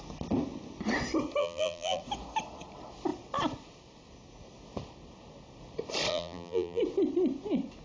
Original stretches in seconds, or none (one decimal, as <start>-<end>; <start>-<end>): 0.0-1.4; 2.0-6.1; 6.8-7.8

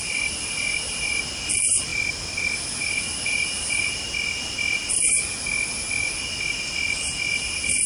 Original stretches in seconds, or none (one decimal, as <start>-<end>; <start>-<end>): 0.0-7.9

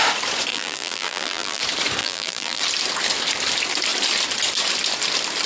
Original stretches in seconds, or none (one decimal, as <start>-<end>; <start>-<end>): 0.0-0.5; 1.6-2.0; 2.6-5.5

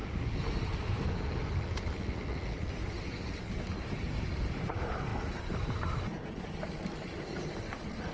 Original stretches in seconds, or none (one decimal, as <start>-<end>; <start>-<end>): 1.4-2.7